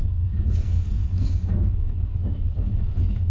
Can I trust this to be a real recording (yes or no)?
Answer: no